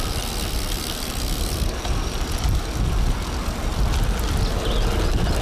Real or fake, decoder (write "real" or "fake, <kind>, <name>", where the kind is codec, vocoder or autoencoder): real